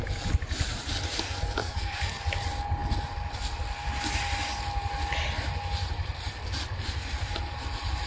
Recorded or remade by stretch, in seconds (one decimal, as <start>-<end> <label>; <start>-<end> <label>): 0.0-1.6 recorded; 1.6-2.2 remade; 2.2-8.1 recorded